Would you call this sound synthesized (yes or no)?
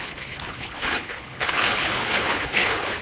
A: yes